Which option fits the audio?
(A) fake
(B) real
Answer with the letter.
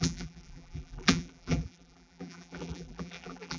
A